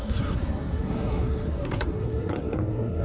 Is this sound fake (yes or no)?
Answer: yes